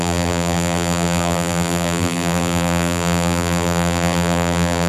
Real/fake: fake